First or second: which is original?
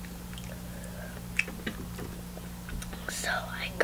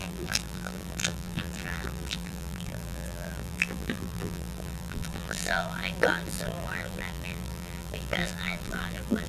first